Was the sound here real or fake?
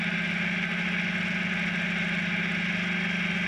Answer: real